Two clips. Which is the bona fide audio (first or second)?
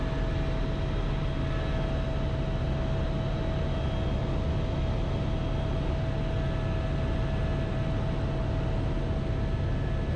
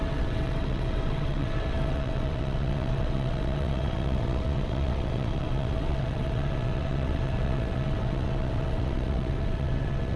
first